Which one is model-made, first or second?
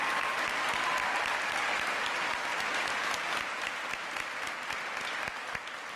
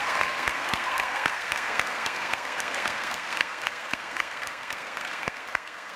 second